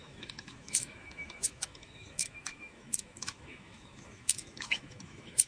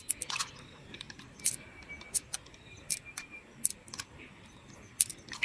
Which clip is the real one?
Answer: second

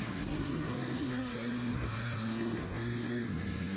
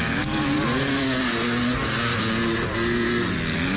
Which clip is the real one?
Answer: second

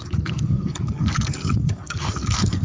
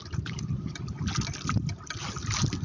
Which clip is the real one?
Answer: second